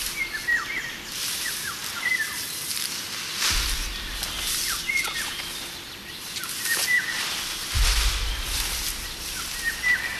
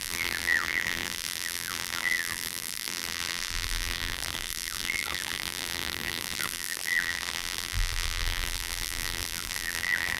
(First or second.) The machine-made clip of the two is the second